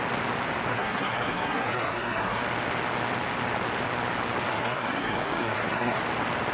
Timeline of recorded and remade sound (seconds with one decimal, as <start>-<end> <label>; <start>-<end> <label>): 0.0-0.7 recorded; 0.7-2.4 remade; 2.4-4.5 recorded; 4.5-6.0 remade; 6.0-6.5 recorded